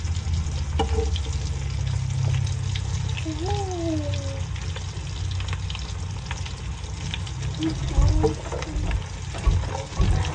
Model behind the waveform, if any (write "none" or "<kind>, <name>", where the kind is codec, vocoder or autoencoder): none